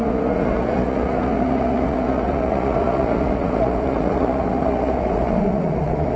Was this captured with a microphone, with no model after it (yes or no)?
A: no